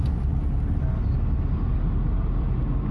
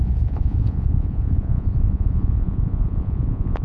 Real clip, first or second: first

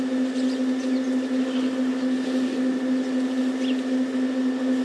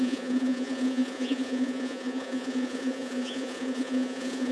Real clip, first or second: first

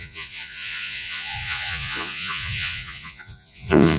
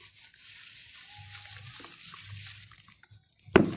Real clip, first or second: second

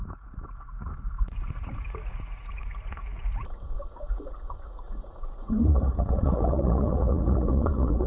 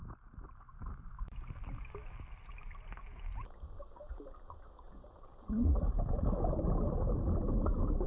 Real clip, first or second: second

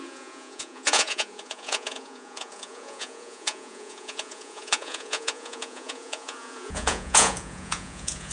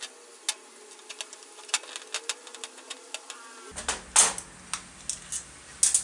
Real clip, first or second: second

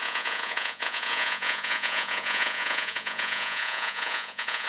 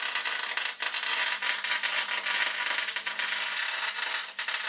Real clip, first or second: second